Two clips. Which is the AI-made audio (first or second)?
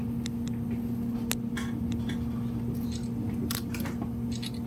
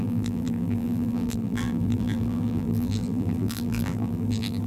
second